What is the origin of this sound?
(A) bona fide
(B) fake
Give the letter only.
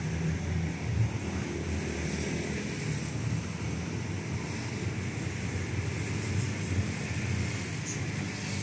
A